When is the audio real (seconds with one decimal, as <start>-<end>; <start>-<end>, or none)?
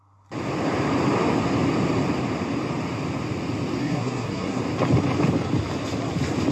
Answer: 0.0-3.8; 4.6-6.5